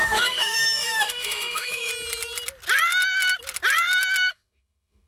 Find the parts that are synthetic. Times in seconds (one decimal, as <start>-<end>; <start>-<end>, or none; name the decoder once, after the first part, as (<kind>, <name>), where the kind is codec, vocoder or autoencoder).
0.0-1.9 (autoencoder, DAC-VAE); 4.3-5.1